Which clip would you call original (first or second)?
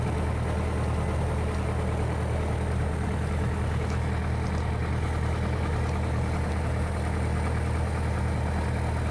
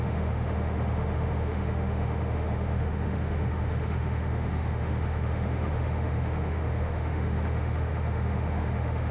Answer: first